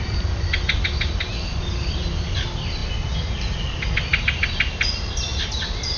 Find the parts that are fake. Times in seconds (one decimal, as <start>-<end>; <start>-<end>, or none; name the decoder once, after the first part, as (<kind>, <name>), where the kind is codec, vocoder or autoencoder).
none